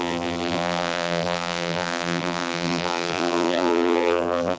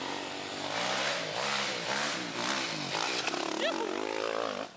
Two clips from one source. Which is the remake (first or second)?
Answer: first